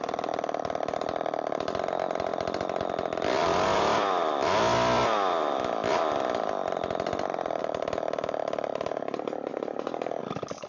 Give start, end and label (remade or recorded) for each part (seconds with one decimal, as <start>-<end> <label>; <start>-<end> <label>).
0.0-9.5 remade; 9.5-10.2 recorded; 10.2-10.7 remade